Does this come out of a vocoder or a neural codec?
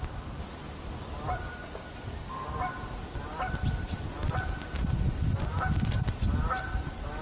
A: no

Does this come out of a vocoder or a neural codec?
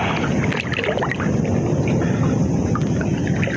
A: no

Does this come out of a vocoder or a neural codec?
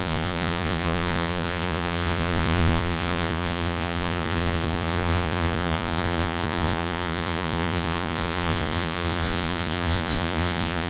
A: yes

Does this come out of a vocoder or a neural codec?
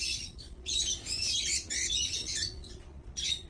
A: yes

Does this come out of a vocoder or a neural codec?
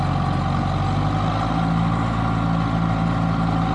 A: no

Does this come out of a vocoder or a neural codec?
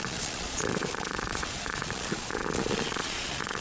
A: yes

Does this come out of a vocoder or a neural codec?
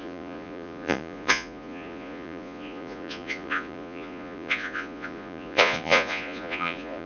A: yes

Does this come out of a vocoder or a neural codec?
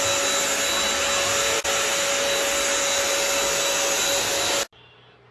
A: no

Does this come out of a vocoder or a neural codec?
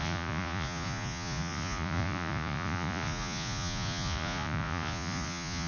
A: yes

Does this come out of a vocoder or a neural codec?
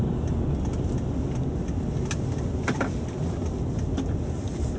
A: no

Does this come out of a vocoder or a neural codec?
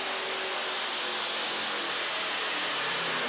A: no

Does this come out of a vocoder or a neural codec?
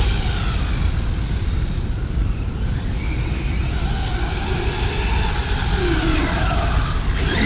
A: no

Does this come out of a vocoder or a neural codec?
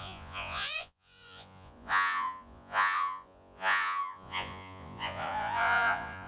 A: yes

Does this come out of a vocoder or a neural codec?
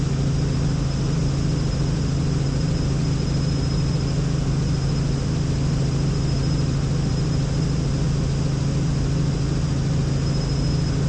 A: no